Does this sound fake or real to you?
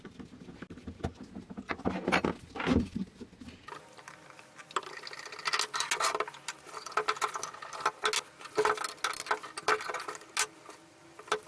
real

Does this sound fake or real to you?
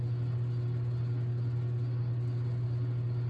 real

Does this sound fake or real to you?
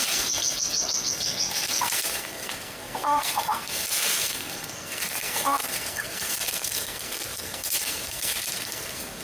fake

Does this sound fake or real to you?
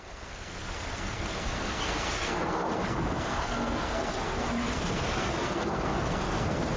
fake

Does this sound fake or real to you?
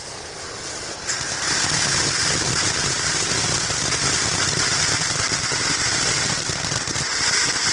real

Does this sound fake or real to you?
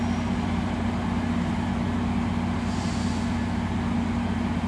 real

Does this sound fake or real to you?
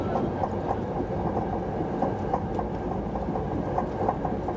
real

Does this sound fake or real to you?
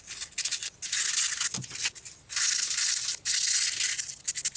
real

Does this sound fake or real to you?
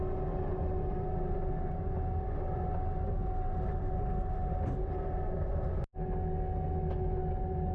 real